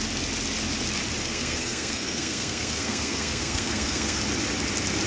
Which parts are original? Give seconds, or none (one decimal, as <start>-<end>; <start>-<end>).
0.0-1.2; 4.2-5.1